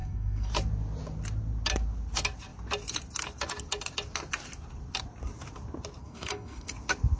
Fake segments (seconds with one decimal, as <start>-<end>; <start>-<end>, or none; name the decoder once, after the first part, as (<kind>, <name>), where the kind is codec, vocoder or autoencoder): 0.0-0.5 (codec, SNAC); 6.0-6.7